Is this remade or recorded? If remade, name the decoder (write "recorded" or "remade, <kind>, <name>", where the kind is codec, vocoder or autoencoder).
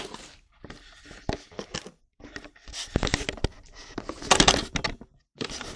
recorded